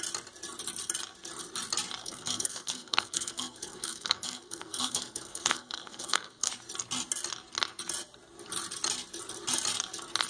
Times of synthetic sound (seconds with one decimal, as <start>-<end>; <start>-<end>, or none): 2.0-6.5